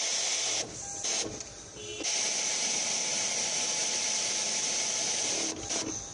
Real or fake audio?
real